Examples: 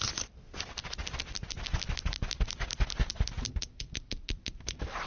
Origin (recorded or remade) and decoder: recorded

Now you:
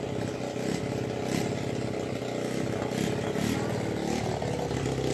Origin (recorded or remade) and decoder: recorded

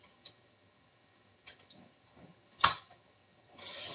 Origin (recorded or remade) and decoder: remade, vocoder, HiFi-GAN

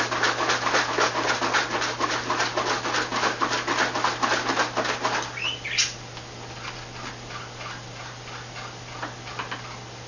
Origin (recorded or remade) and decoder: recorded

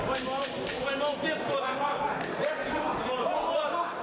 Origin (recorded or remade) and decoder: recorded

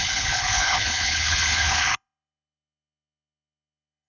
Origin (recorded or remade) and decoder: remade, codec, HILCodec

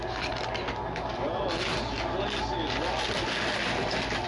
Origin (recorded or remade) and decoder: recorded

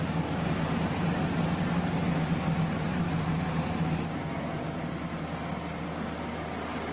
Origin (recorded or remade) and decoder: recorded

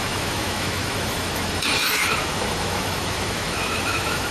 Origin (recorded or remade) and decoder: remade, autoencoder, DAC-VAE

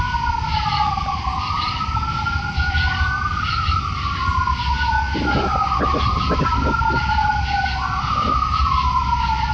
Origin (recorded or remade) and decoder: recorded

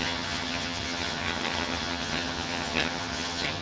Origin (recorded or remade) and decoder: remade, vocoder, HiFi-GAN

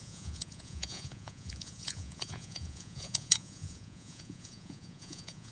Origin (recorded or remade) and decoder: remade, vocoder, Vocos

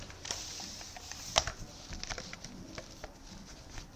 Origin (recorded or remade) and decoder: recorded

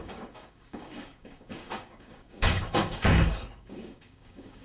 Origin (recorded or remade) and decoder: remade, codec, DAC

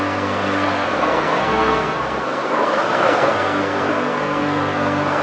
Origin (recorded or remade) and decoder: remade, codec, SNAC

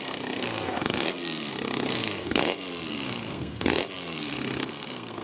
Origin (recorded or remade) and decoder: remade, codec, SNAC